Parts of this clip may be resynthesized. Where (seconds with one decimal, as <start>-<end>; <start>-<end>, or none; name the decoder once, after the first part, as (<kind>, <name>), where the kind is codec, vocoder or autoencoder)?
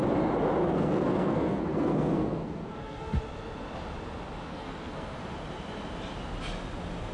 0.6-3.2 (codec, SNAC); 4.5-5.2